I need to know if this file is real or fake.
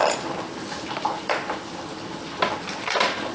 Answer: real